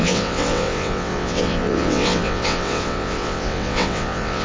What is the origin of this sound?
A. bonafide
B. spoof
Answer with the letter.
B